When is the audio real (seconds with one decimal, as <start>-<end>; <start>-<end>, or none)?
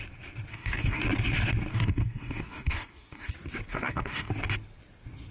0.0-0.5; 1.0-1.7; 3.3-3.7; 4.3-5.3